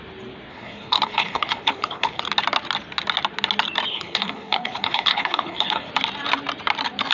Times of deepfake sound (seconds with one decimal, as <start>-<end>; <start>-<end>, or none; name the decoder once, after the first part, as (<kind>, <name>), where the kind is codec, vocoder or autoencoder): 0.5-2.2 (codec, HILCodec); 3.9-5.9